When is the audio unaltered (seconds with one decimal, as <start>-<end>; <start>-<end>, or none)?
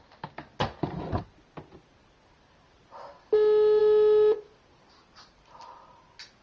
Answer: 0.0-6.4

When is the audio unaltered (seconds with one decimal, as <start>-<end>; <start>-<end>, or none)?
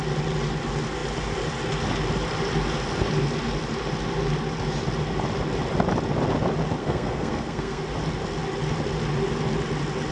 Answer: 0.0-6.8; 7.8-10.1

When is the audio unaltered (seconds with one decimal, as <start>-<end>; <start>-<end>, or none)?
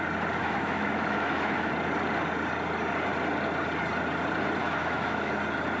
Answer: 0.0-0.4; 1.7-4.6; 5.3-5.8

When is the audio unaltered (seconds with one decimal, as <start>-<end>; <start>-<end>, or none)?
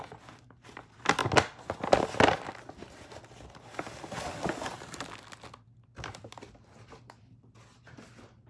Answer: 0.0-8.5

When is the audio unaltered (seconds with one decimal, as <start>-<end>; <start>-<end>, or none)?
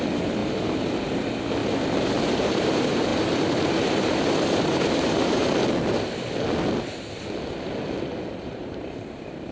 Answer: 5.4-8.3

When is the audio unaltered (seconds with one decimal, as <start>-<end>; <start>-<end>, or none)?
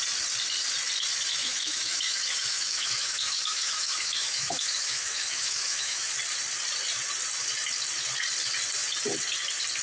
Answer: 0.0-1.4; 6.1-9.8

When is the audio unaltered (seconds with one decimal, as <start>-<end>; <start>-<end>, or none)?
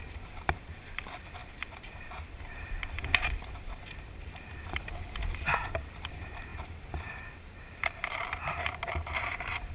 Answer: none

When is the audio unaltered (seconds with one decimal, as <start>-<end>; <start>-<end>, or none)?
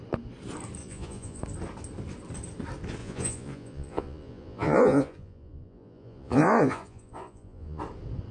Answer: 0.0-0.8; 1.4-3.0; 7.8-8.3